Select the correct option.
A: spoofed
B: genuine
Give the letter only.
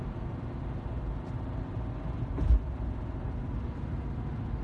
B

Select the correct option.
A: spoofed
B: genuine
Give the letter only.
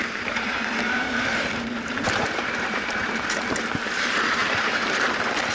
A